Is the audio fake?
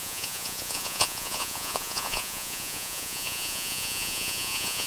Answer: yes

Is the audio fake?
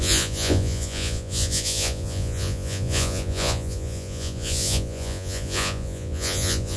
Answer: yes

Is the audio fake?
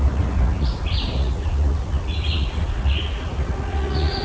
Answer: yes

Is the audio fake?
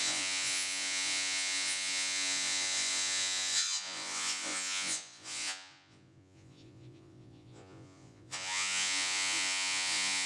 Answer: yes